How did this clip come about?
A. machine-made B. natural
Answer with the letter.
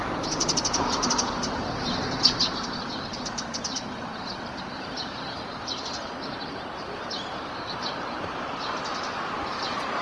A